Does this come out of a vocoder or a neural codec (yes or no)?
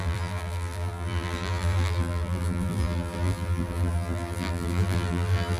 yes